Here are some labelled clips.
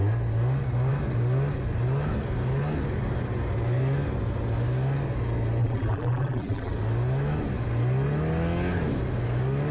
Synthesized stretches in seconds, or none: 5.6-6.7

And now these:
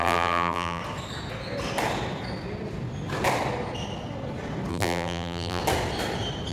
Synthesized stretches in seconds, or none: 0.0-0.8; 4.7-5.6